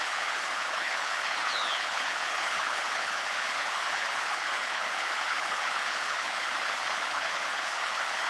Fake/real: fake